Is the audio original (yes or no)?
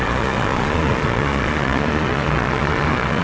no